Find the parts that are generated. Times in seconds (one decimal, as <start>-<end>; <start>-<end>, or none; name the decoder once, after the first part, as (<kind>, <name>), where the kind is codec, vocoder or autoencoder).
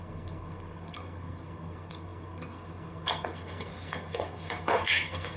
0.0-5.4 (codec, SNAC)